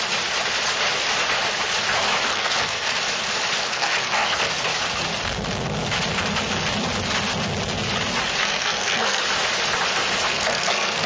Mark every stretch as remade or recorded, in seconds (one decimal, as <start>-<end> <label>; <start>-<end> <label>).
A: 0.0-2.3 recorded; 2.3-2.9 remade; 2.9-3.7 recorded; 3.7-4.5 remade; 4.5-8.4 recorded; 8.4-9.2 remade; 9.2-10.3 recorded; 10.3-11.1 remade